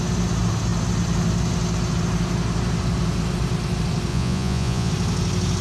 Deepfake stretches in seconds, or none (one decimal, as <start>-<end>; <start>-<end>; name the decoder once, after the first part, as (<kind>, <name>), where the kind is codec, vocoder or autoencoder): 4.1-4.9 (vocoder, Vocos)